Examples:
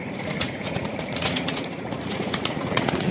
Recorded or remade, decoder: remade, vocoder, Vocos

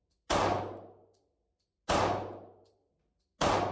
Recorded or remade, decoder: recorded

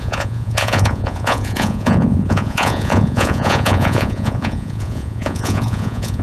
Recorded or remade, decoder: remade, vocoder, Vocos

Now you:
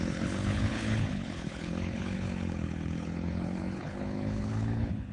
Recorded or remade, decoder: remade, codec, HILCodec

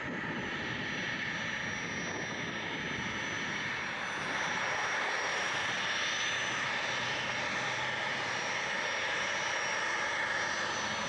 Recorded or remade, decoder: recorded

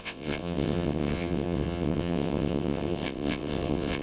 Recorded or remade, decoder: remade, vocoder, WaveNeXt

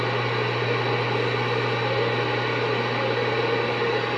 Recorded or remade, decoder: recorded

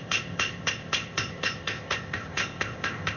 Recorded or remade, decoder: remade, codec, ZipCodec